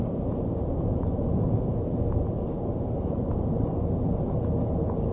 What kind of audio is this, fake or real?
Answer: real